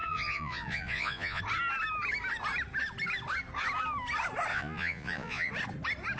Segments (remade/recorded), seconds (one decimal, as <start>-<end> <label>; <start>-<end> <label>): 0.0-1.4 remade; 1.4-4.5 recorded; 4.5-5.5 remade; 5.5-6.2 recorded